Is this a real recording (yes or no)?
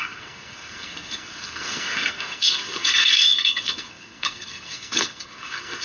no